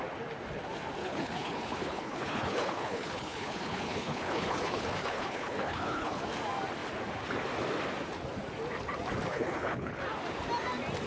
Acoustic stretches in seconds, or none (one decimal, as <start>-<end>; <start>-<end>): 0.0-1.0; 6.2-9.3; 10.0-11.1